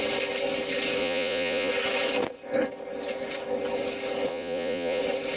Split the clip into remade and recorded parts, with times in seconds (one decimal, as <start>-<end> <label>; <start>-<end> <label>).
0.0-1.0 recorded; 1.0-1.7 remade; 1.7-4.3 recorded; 4.3-5.0 remade; 5.0-5.4 recorded